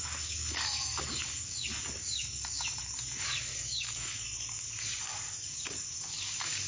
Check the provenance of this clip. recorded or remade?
remade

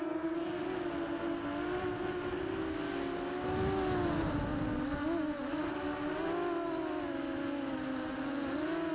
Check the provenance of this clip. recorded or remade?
recorded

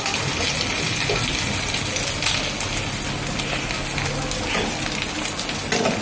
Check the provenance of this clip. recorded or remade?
recorded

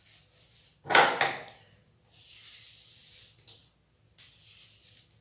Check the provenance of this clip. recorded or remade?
recorded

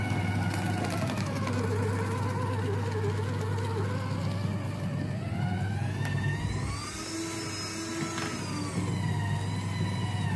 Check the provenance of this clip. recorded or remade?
recorded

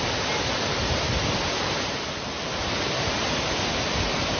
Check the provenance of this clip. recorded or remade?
recorded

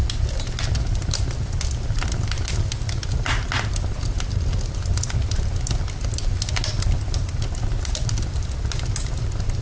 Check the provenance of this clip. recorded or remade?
recorded